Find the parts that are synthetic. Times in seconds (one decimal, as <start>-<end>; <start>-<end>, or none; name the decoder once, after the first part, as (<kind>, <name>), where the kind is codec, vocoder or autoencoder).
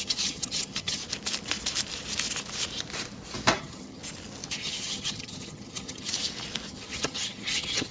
0.0-1.0 (vocoder, HiFi-GAN); 3.5-4.0; 4.5-6.1; 6.7-7.9